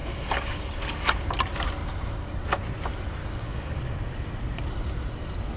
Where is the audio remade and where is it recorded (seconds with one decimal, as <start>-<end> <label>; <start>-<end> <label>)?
0.0-0.6 remade; 0.6-3.2 recorded; 3.2-3.7 remade; 3.7-5.6 recorded